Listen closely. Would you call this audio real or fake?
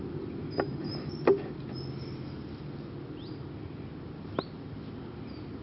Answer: real